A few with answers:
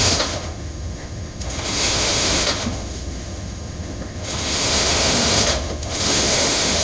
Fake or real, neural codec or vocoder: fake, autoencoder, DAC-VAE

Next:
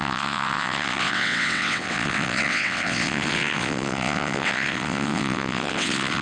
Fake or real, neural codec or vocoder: fake, vocoder, WaveNeXt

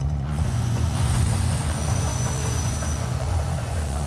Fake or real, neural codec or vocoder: fake, vocoder, Vocos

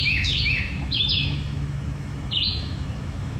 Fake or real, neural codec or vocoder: fake, autoencoder, DAC-VAE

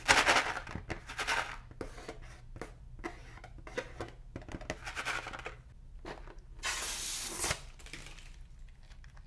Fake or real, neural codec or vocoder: real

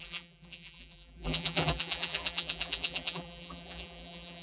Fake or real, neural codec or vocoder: fake, vocoder, BigVGAN v2